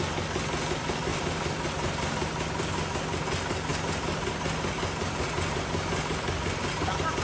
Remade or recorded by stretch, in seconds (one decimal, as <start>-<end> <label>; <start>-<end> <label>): 0.0-7.2 recorded